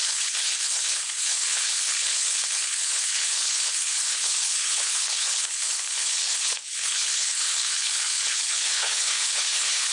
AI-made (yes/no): yes